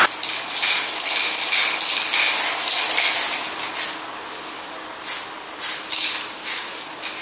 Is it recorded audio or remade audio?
recorded